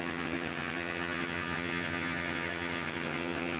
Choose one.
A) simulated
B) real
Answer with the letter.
A